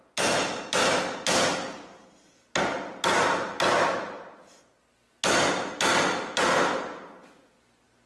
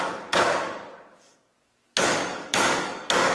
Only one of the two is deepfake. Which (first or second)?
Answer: second